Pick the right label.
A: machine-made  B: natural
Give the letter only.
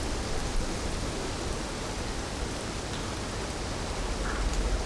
B